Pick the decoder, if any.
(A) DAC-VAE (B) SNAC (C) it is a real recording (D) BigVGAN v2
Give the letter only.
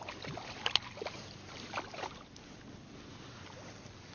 C